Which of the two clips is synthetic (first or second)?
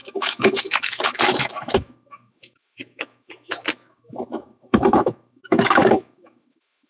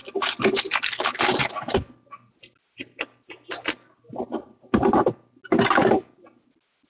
first